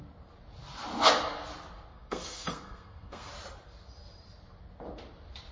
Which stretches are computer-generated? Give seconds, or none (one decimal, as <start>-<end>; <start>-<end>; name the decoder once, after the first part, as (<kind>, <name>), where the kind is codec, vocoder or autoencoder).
1.9-3.3 (codec, SNAC)